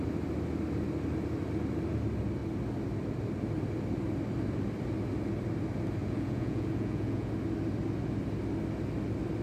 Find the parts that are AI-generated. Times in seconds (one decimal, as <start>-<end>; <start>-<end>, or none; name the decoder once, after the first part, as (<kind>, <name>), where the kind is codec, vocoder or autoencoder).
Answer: 6.0-7.3 (vocoder, Vocos)